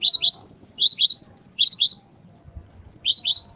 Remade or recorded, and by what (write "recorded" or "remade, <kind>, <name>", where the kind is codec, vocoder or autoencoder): remade, vocoder, Vocos